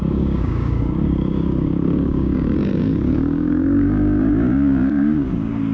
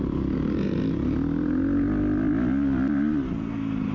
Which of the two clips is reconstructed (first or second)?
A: first